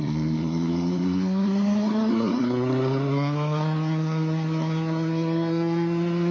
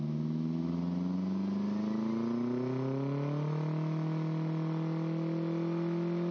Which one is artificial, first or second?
first